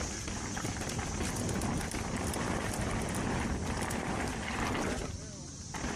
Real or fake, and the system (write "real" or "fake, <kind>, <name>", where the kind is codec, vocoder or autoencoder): real